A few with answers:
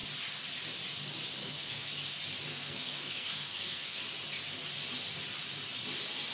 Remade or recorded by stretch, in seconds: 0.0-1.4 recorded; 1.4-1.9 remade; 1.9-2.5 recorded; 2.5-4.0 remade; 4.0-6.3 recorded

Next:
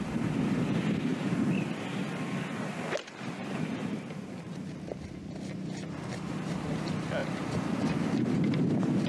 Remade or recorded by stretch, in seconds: 0.0-3.4 recorded; 3.4-5.2 remade; 5.2-7.2 recorded; 7.2-8.3 remade; 8.3-9.1 recorded

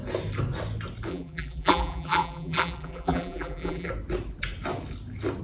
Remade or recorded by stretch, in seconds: 0.0-1.1 recorded; 1.1-3.9 remade; 3.9-5.4 recorded